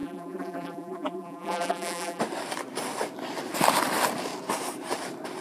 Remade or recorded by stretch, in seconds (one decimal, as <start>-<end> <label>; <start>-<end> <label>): 0.0-2.2 remade; 2.2-5.4 recorded